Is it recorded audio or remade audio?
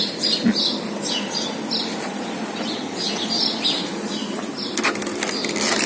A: recorded